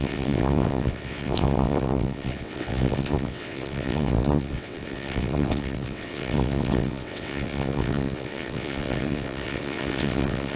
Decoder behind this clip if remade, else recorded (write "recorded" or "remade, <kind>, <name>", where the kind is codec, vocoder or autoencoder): remade, vocoder, WaveNeXt